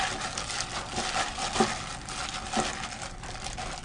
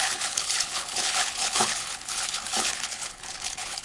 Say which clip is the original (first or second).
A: first